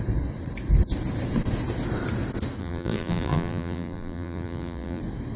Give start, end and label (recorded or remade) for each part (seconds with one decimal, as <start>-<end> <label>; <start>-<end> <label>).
0.0-2.6 recorded; 2.6-5.0 remade; 5.0-5.4 recorded